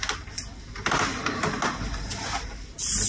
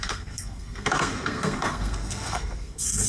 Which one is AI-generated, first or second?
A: second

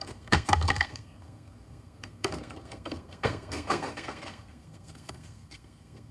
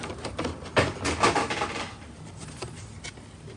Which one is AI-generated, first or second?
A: first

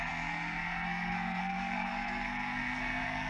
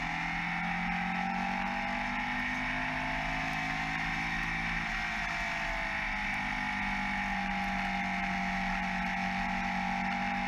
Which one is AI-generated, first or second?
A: first